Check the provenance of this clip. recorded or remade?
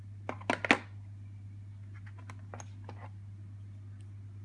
recorded